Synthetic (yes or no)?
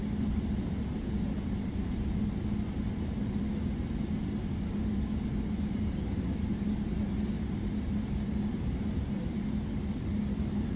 no